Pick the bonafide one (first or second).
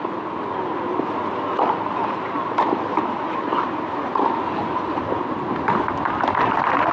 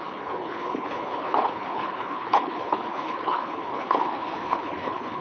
first